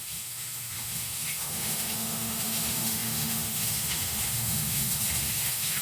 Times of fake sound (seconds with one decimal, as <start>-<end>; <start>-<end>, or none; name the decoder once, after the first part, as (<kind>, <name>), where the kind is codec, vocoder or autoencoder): 0.0-5.8 (autoencoder, DAC-VAE)